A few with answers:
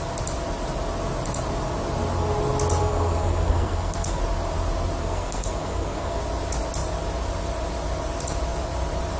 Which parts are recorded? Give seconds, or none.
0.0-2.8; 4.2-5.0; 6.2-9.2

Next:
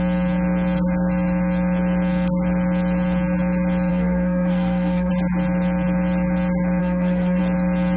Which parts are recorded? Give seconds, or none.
0.0-3.9; 5.1-6.8; 7.4-8.0

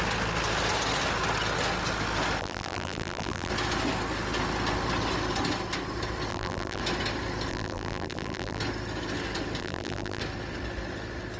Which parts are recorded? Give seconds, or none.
0.0-2.4; 3.5-6.3; 6.8-7.5; 8.6-9.6; 10.2-11.4

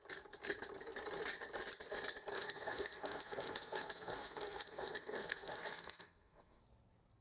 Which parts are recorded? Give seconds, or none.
0.0-2.3; 6.6-7.2

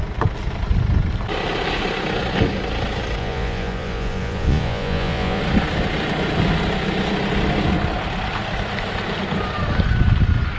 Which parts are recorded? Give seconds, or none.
0.0-3.2; 5.4-10.6

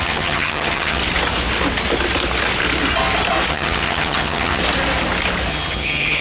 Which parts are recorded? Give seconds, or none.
1.0-3.5; 4.6-5.5

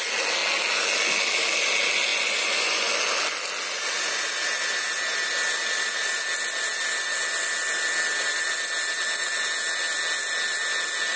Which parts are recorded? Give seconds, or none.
0.0-2.1; 2.9-11.2

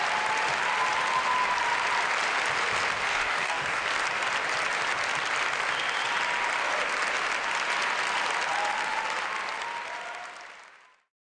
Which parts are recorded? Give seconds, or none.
0.0-3.1; 3.8-11.3